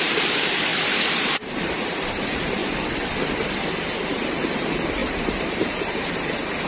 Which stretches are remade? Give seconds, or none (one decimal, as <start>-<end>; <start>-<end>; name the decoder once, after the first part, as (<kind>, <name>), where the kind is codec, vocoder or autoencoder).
0.0-2.6 (vocoder, BigVGAN v2); 3.6-6.7